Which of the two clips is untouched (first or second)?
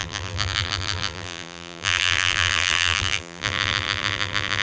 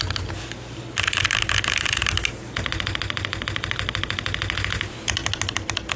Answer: second